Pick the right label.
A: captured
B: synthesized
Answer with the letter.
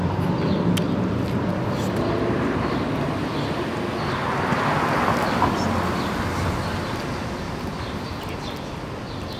A